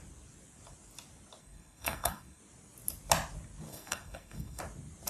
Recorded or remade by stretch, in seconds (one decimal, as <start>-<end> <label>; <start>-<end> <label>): 0.0-1.4 recorded; 1.4-2.4 remade; 2.4-3.7 recorded; 3.7-4.6 remade; 4.6-5.1 recorded

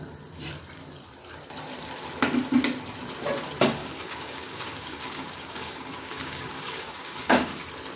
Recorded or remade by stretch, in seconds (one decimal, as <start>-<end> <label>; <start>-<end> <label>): 0.0-3.8 recorded; 3.8-7.6 remade; 7.6-8.0 recorded

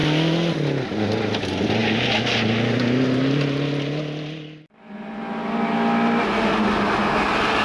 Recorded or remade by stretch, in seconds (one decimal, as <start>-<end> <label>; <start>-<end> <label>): 0.0-7.6 recorded

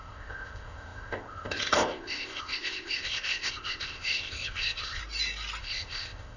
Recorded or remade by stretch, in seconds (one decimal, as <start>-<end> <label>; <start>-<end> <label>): 0.0-5.0 remade; 5.0-5.6 recorded; 5.6-6.4 remade

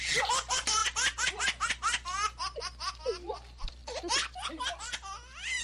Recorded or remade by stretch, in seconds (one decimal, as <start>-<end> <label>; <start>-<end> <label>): 0.0-0.8 remade; 0.8-3.0 recorded; 3.0-3.8 remade; 3.8-5.6 recorded

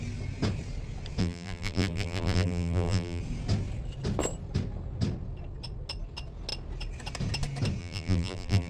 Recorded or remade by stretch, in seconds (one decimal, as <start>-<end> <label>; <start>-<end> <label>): 0.0-1.2 recorded; 1.2-3.2 remade; 3.2-7.8 recorded; 7.8-8.7 remade

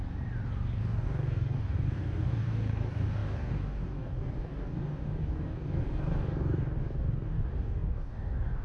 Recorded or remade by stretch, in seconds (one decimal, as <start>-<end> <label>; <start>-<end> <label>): 0.0-0.8 recorded; 0.8-8.6 remade

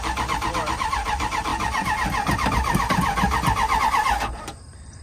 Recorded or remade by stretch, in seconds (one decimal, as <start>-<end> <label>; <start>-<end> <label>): 0.0-5.0 remade